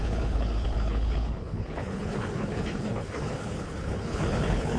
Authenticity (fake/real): fake